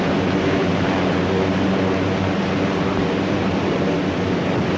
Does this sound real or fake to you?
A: real